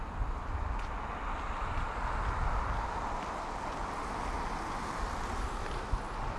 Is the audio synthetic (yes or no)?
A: no